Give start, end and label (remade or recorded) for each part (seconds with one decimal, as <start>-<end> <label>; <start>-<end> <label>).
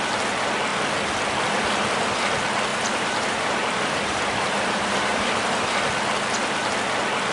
0.0-2.7 recorded; 2.7-5.3 remade; 5.3-7.3 recorded